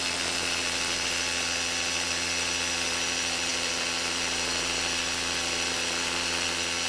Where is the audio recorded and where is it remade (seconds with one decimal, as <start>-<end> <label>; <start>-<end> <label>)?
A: 0.0-6.9 recorded